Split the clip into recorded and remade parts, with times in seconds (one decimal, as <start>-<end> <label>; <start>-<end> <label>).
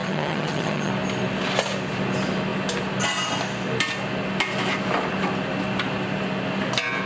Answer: 0.0-0.9 remade; 0.9-7.1 recorded